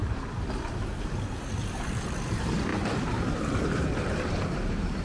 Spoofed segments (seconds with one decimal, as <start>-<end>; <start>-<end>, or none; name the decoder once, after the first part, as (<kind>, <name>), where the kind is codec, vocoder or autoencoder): 0.7-5.0 (vocoder, BigVGAN v2)